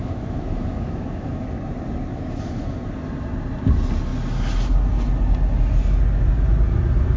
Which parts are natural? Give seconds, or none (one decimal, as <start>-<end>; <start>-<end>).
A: 1.5-2.1; 2.8-7.2